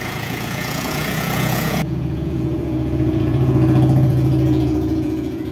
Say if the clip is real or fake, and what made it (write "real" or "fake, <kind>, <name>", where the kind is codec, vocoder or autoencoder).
fake, vocoder, Vocos